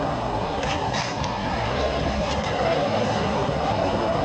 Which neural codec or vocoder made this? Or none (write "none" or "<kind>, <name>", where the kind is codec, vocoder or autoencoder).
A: codec, SNAC